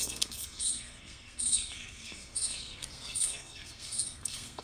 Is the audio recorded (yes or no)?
no